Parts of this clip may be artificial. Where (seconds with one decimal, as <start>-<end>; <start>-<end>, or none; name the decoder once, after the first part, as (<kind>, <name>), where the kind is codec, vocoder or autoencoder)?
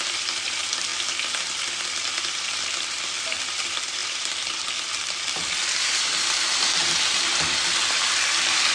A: 0.0-0.9 (vocoder, BigVGAN v2); 1.5-8.7